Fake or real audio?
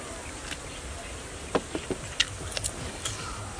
real